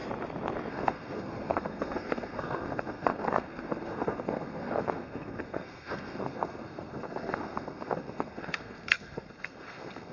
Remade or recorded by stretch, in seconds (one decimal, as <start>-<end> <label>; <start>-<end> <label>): 0.0-0.7 recorded; 0.7-10.1 remade